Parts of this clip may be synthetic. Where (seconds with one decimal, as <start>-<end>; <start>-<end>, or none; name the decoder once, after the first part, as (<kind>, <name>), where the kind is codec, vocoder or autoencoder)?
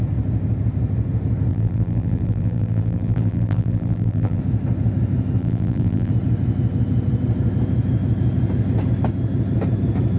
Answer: 1.5-4.4 (vocoder, BigVGAN v2); 5.4-6.1